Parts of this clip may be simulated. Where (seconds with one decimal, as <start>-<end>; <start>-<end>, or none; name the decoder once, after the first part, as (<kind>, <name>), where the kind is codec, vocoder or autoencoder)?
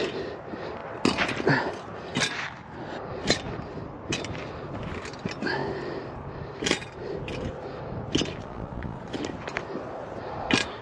8.4-9.1 (vocoder, Vocos)